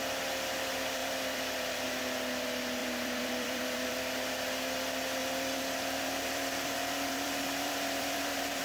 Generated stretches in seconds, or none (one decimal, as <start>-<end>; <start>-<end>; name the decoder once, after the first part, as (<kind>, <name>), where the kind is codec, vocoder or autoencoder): 1.0-2.0 (vocoder, BigVGAN v2); 2.8-4.0; 5.2-8.6